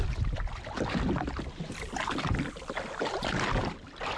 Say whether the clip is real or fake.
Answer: real